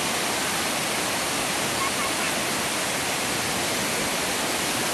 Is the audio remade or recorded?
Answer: recorded